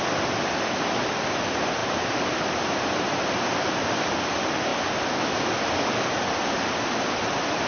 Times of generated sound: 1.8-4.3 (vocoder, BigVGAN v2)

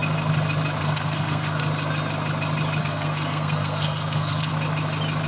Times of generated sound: 0.8-1.6 (codec, SNAC); 2.8-4.5

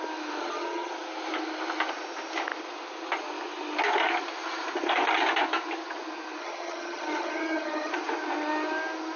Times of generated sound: 0.4-0.9 (vocoder, HiFi-GAN); 6.4-7.9

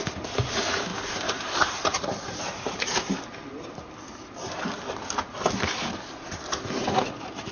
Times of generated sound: 0.9-3.8 (vocoder, BigVGAN v2)